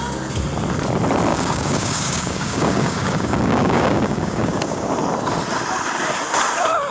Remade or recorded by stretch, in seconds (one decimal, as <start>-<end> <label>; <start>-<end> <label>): 0.0-1.3 recorded; 1.3-4.9 remade; 4.9-6.9 recorded